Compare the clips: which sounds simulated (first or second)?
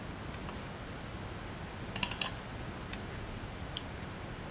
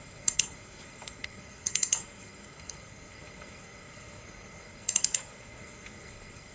second